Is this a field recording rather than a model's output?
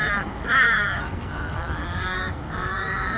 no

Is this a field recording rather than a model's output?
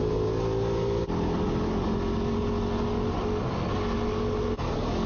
yes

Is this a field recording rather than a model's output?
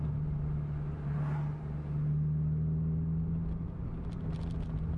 yes